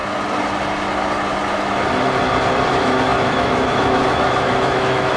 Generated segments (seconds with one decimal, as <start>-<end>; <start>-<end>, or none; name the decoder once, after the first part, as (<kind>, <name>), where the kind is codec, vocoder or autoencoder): 2.7-5.2 (autoencoder, DAC-VAE)